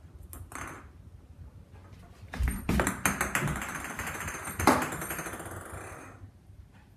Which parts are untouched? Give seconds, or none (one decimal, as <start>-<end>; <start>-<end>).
0.0-7.0